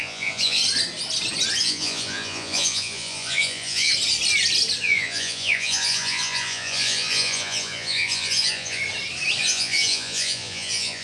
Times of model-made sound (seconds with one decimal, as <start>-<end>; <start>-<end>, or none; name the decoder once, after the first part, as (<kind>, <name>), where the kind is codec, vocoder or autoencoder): 0.0-0.6 (vocoder, Vocos); 1.6-3.9; 4.8-8.8; 9.4-11.0